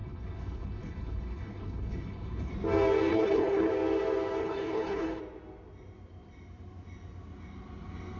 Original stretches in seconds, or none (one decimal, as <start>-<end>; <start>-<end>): 2.5-3.1; 3.7-4.4; 5.2-8.2